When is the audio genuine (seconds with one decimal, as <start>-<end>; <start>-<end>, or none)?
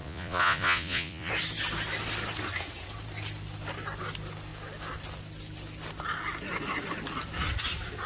1.3-8.1